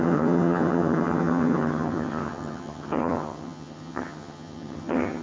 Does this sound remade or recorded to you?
remade